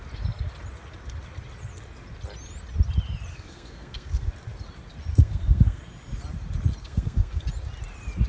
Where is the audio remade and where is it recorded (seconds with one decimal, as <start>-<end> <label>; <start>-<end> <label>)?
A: 0.0-3.3 recorded; 3.3-4.3 remade; 4.3-5.1 recorded; 5.1-5.8 remade; 5.8-6.8 recorded; 6.8-7.4 remade; 7.4-8.3 recorded